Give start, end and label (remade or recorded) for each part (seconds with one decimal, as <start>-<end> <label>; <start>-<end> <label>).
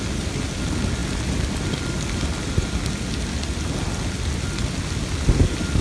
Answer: 0.0-5.8 recorded